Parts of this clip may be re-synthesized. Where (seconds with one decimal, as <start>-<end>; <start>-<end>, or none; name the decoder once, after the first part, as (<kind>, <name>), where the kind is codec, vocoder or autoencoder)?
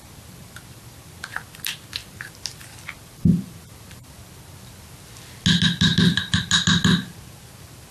none